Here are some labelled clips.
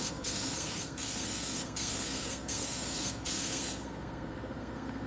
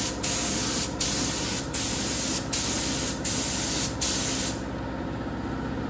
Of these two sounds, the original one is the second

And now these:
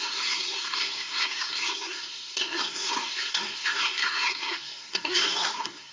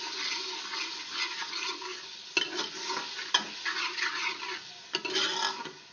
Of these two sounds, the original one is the second